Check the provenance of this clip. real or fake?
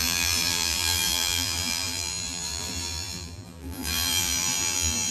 fake